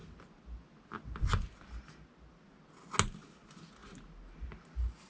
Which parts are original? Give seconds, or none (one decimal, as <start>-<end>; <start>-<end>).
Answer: 0.0-5.1